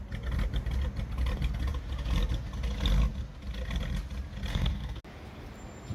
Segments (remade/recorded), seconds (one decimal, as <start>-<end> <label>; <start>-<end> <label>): 0.0-4.5 recorded; 4.5-5.0 remade; 5.0-5.9 recorded

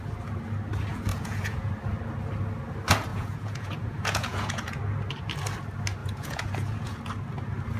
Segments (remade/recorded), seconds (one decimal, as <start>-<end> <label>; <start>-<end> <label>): 0.0-1.1 recorded; 1.1-1.7 remade; 1.7-3.1 recorded; 3.1-4.8 remade; 4.8-6.0 recorded; 6.0-7.0 remade; 7.0-7.8 recorded